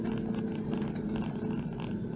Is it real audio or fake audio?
real